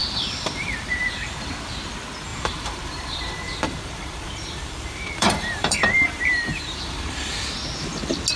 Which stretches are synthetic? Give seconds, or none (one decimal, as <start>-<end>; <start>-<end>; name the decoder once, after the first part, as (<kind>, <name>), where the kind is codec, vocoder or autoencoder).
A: 0.0-1.5 (vocoder, BigVGAN v2); 2.3-7.3